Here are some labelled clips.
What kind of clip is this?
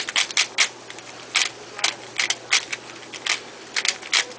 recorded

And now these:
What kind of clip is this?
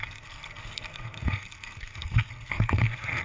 remade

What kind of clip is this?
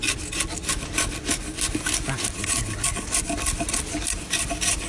recorded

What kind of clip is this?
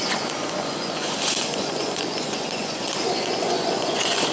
remade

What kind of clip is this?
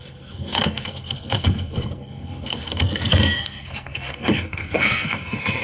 remade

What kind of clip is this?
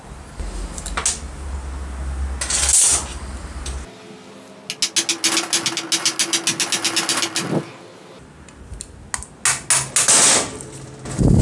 recorded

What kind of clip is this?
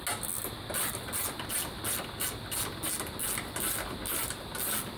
recorded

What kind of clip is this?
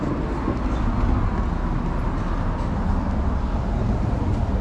recorded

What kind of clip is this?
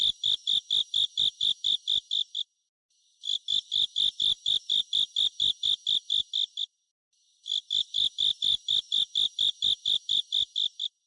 recorded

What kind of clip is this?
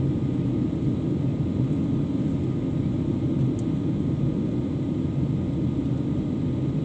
recorded